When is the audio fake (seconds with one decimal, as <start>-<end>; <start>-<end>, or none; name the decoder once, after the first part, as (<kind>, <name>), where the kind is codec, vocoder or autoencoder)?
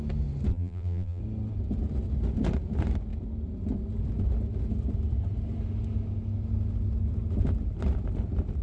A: 0.5-1.2 (vocoder, BigVGAN v2)